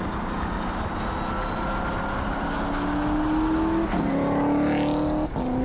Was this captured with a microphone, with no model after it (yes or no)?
yes